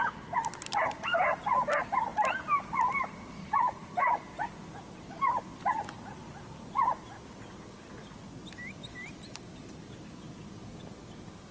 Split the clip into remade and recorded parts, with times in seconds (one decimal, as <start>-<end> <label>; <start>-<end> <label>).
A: 0.0-11.5 recorded